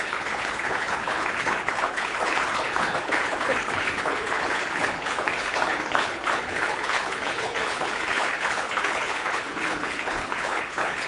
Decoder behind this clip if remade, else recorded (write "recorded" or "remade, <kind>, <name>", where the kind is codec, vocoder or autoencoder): remade, codec, HILCodec